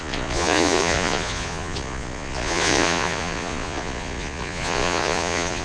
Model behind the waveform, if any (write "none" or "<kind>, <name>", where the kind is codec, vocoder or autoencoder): vocoder, Vocos